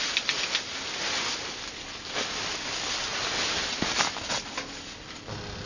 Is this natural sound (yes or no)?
yes